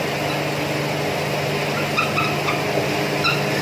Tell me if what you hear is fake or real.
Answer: real